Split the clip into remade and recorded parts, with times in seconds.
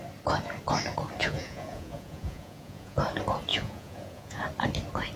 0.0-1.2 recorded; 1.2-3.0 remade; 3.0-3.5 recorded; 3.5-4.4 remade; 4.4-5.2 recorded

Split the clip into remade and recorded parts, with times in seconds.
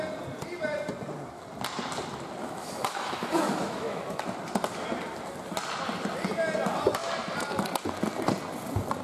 0.0-2.4 recorded; 2.4-4.2 remade; 4.2-9.0 recorded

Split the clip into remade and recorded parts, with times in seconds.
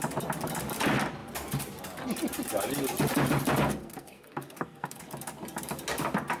0.0-3.8 recorded; 3.8-5.0 remade; 5.0-6.4 recorded